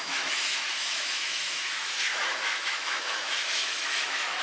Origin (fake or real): fake